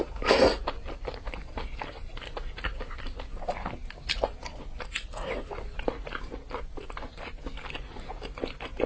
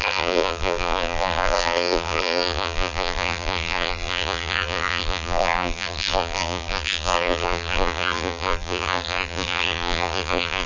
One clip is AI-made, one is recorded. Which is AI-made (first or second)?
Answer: second